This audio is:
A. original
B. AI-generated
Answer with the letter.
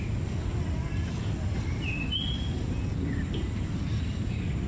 A